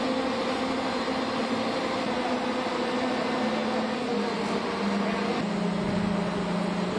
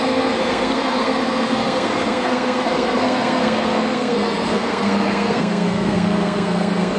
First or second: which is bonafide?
first